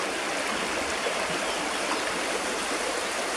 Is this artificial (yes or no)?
no